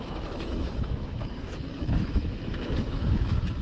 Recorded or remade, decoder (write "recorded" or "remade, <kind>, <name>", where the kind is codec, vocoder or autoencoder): remade, autoencoder, DAC-VAE